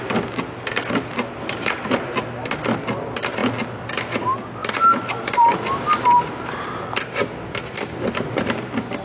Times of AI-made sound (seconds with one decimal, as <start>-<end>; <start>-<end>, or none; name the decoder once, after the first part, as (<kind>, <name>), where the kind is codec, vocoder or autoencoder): none